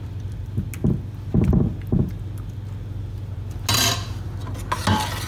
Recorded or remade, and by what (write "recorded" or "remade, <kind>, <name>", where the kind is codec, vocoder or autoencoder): recorded